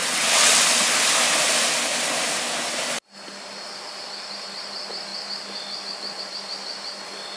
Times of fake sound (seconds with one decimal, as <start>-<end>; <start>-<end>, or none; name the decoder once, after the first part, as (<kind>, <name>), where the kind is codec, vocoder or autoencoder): 0.0-0.5 (vocoder, WaveNeXt)